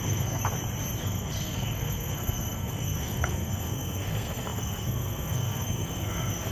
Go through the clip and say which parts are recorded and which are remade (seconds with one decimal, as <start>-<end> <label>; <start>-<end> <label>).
0.0-0.4 remade; 0.4-1.0 recorded; 1.0-6.5 remade

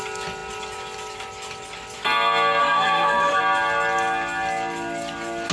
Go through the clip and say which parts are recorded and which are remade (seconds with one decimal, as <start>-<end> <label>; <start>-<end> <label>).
0.0-2.6 recorded; 2.6-3.4 remade; 3.4-5.5 recorded

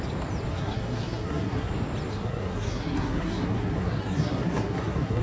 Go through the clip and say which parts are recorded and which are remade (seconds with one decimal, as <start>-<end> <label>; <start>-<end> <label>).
0.0-0.5 recorded; 0.5-1.7 remade; 1.7-2.1 recorded; 2.1-5.2 remade

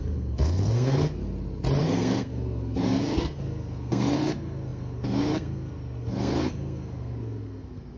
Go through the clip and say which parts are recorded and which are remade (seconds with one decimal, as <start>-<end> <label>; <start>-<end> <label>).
0.0-1.2 remade; 1.2-1.8 recorded; 1.8-8.0 remade

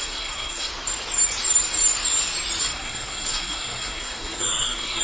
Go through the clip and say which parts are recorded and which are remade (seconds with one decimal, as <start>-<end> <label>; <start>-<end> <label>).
0.0-0.7 remade; 0.7-2.6 recorded; 2.6-5.0 remade